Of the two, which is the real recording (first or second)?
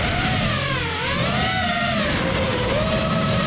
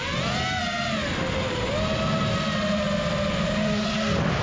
second